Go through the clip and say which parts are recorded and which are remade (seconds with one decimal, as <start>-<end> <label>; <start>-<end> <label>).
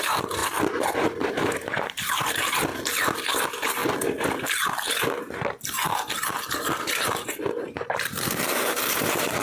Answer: 0.0-0.4 remade; 0.4-1.3 recorded; 1.3-2.7 remade; 2.7-3.4 recorded; 3.4-3.8 remade; 3.8-5.0 recorded; 5.0-9.4 remade